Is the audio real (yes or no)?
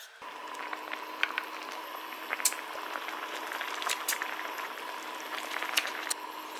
yes